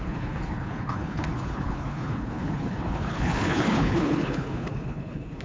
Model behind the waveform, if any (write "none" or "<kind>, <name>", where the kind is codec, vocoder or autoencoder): codec, HILCodec